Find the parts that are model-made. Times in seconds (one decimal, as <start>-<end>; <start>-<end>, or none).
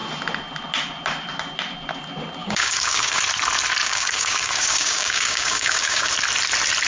2.4-3.2; 3.8-6.1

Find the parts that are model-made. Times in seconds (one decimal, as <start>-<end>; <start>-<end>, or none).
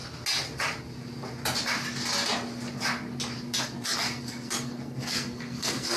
3.6-6.0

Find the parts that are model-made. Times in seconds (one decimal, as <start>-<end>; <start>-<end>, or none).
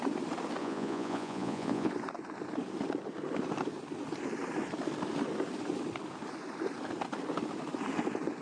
0.6-1.9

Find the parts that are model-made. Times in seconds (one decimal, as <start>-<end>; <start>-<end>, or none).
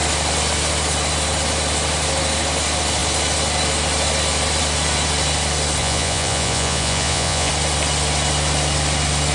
5.8-7.5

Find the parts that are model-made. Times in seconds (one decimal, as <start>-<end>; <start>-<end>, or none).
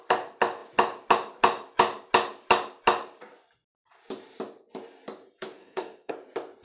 5.6-6.1